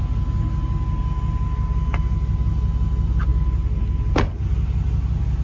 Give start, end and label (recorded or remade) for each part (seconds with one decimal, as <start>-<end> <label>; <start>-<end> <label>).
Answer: 0.0-5.4 recorded